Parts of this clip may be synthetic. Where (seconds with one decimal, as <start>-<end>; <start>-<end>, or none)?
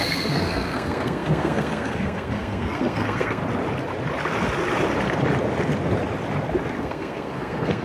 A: 0.0-3.4; 6.8-7.8